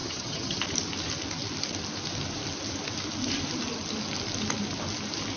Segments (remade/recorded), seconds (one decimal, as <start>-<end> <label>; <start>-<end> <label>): 0.0-0.6 remade; 0.6-5.4 recorded